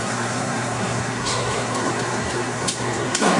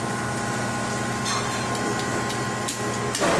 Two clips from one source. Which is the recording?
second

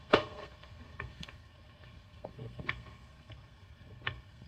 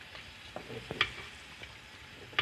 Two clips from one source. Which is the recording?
second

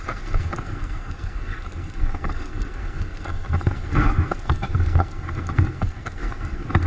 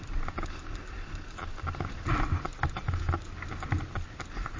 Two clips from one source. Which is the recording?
second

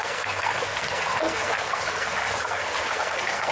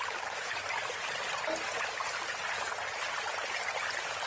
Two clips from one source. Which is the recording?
second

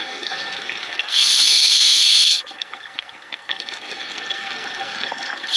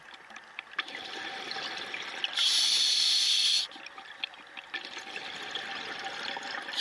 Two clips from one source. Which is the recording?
second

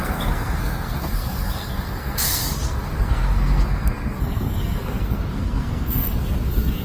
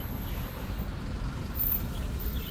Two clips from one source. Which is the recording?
second